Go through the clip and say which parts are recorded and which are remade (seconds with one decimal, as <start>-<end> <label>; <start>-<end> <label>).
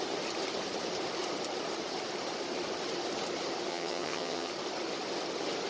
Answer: 0.0-3.7 recorded; 3.7-4.5 remade; 4.5-5.7 recorded